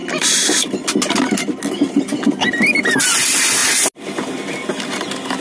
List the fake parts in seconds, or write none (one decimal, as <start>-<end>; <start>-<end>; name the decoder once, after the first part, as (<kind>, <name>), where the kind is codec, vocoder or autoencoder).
none